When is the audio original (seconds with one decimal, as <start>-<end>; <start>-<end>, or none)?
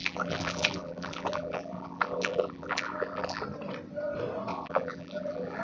3.4-4.5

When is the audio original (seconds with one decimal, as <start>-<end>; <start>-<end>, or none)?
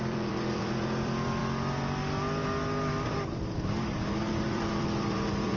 1.4-3.9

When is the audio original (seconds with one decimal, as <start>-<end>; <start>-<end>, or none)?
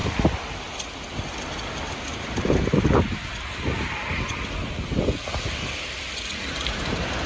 0.0-1.9; 3.2-6.5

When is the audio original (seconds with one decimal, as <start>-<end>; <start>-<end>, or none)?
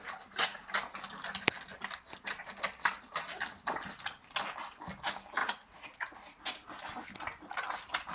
0.0-5.4; 6.4-8.1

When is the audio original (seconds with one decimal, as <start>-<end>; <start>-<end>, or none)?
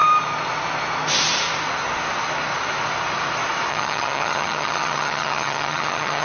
0.0-3.7